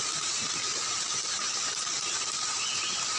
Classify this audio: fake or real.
real